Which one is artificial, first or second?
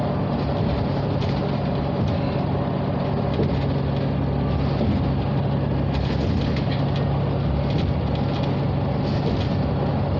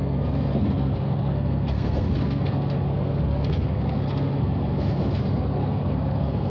second